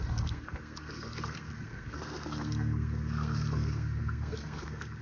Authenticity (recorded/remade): remade